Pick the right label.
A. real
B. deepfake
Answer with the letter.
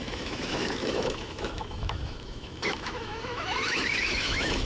B